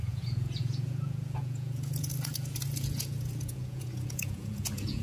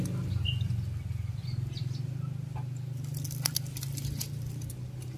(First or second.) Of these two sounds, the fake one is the first